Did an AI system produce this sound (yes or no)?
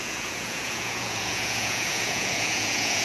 yes